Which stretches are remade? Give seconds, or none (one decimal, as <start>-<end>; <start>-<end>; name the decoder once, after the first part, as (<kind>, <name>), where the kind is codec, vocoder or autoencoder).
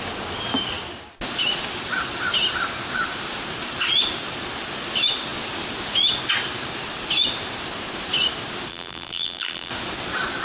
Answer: 8.7-9.7 (vocoder, BigVGAN v2)